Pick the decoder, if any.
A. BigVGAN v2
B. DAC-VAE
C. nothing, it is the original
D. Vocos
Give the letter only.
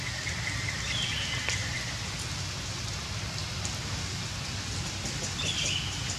C